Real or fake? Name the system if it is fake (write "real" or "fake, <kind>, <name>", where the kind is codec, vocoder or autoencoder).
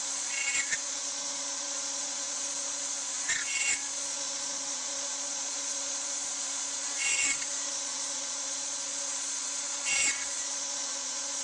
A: fake, vocoder, Vocos